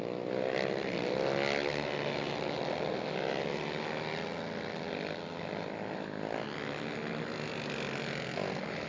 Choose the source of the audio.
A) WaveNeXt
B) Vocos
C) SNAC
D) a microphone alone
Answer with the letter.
D